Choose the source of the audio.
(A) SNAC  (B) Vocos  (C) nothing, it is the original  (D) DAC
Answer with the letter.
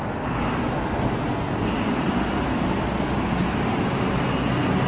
C